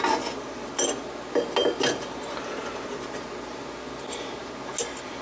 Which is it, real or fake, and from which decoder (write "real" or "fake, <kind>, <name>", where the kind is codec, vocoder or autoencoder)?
real